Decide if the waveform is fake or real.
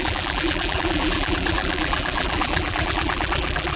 fake